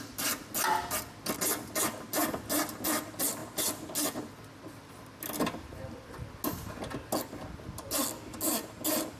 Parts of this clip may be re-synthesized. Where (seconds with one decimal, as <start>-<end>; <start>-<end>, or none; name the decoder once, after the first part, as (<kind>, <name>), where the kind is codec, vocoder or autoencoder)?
none

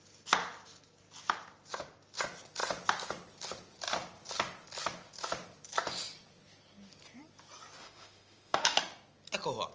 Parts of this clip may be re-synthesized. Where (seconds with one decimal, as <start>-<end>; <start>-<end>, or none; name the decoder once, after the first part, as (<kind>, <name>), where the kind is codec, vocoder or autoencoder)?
7.8-8.8 (autoencoder, DAC-VAE)

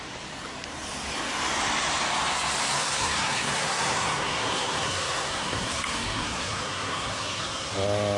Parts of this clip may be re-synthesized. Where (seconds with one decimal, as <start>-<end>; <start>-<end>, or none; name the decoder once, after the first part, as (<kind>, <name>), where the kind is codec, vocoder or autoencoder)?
2.8-7.7 (codec, SNAC)

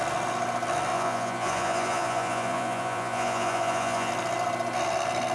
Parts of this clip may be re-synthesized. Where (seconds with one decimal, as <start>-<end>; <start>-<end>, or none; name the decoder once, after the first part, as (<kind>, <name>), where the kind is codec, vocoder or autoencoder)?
0.9-4.1 (vocoder, Vocos)

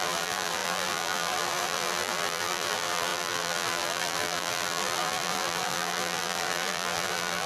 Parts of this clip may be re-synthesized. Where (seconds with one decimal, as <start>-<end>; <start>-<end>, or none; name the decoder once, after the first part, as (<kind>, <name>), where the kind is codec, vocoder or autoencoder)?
0.0-7.5 (vocoder, BigVGAN v2)

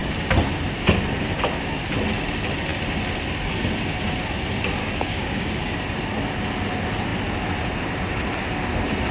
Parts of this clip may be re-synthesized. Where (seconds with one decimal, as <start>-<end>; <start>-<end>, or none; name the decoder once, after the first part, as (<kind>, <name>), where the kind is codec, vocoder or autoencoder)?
4.8-5.6 (codec, DAC)